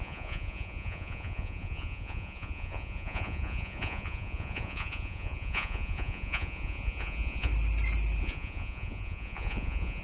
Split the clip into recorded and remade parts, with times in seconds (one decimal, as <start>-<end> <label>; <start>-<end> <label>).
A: 0.0-7.5 remade; 7.5-8.2 recorded; 8.2-10.0 remade